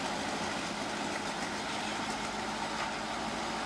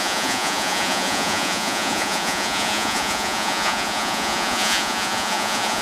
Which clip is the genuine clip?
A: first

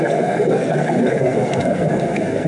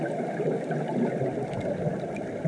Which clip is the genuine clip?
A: second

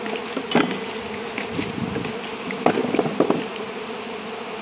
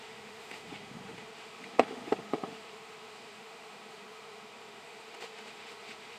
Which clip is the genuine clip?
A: first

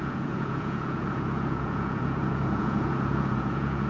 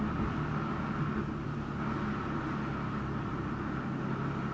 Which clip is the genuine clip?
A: second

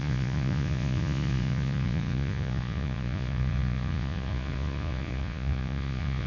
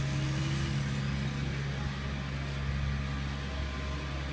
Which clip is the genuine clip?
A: second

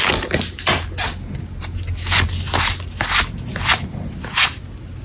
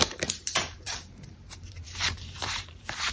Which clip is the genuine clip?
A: first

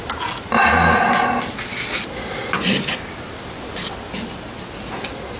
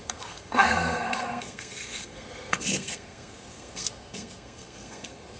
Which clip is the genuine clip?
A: first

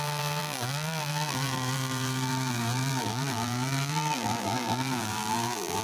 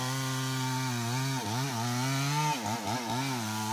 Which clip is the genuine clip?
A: second